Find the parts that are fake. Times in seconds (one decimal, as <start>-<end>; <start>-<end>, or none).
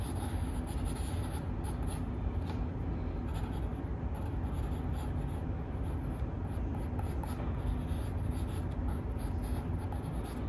none